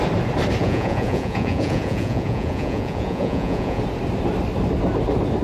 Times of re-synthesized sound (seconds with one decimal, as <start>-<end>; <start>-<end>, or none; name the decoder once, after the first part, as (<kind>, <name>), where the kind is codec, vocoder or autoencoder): 0.6-3.8 (vocoder, Vocos)